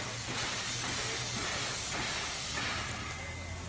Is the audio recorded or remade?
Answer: recorded